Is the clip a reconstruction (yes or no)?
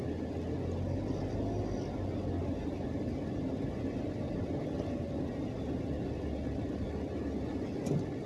no